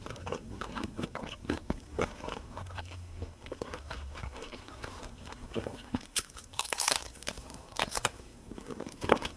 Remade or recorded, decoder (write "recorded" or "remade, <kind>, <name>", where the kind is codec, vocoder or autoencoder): remade, codec, SNAC